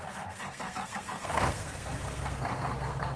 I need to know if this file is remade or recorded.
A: remade